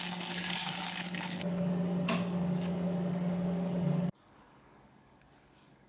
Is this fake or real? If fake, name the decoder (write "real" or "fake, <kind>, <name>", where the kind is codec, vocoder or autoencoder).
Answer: fake, codec, DAC